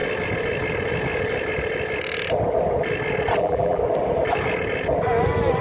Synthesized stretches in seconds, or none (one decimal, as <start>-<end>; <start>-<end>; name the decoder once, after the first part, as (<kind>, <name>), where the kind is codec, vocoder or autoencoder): 3.4-3.8 (vocoder, BigVGAN v2)